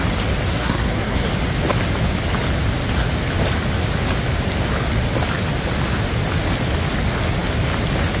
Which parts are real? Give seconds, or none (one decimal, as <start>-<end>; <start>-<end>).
0.0-0.5; 1.3-8.2